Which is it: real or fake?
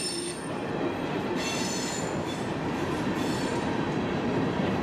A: fake